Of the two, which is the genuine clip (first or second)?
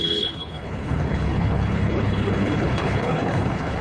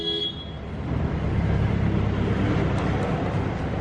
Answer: second